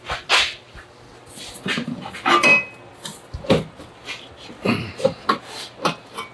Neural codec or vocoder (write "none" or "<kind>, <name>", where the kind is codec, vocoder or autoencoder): none